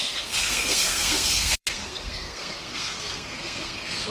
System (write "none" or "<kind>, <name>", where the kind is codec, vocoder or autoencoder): codec, SNAC